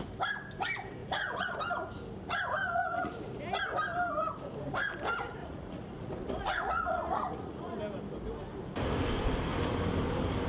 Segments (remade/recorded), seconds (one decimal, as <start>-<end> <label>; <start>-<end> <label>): 0.0-1.0 recorded; 1.0-1.6 remade; 1.6-2.6 recorded; 2.6-3.2 remade; 3.2-5.4 recorded; 5.4-7.8 remade; 7.8-10.5 recorded